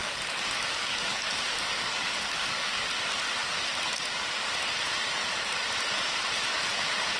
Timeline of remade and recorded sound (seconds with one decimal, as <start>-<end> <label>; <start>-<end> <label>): 0.0-2.9 remade; 2.9-7.2 recorded